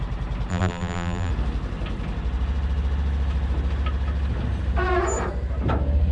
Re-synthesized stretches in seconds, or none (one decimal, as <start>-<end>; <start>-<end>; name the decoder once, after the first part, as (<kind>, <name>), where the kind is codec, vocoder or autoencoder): 0.5-1.3 (vocoder, BigVGAN v2)